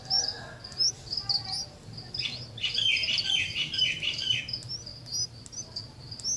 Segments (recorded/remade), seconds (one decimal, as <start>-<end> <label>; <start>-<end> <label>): 0.0-3.0 recorded; 3.0-4.4 remade; 4.4-4.9 recorded; 4.9-5.6 remade; 5.6-6.4 recorded